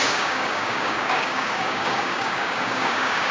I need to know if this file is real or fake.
fake